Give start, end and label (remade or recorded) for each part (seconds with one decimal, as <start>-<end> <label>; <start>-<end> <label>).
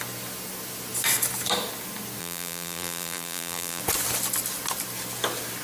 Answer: 0.0-2.2 recorded; 2.2-3.8 remade; 3.8-5.6 recorded